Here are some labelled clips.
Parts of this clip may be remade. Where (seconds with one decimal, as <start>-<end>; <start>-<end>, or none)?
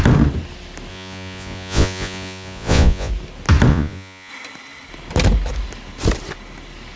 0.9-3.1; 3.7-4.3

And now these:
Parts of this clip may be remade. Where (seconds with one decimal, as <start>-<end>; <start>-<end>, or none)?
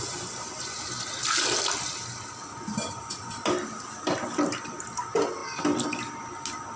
none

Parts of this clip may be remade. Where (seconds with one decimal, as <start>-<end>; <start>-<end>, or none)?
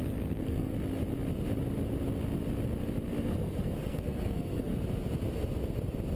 0.0-0.7; 3.2-4.7